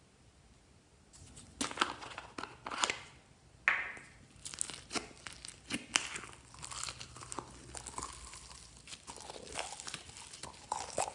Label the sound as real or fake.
real